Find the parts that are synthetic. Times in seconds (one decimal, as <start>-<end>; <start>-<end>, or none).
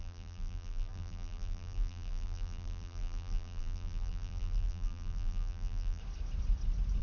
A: 0.0-6.0